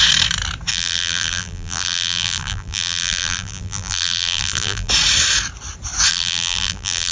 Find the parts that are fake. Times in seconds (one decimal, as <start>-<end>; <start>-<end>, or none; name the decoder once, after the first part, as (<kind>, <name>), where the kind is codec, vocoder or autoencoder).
0.7-4.9 (vocoder, BigVGAN v2); 6.1-7.1